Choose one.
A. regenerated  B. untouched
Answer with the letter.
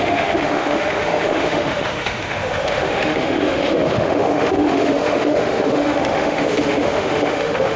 A